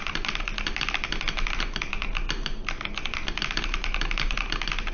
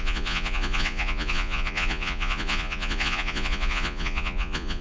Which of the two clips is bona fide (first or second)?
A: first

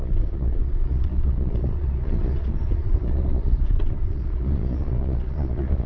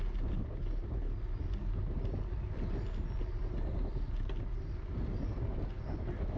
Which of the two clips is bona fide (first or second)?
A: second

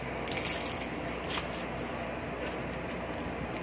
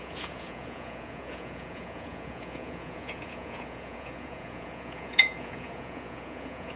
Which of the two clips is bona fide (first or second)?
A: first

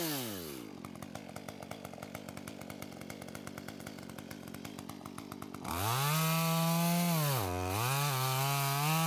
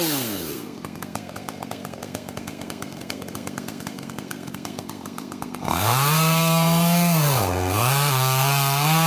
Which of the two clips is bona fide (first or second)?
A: first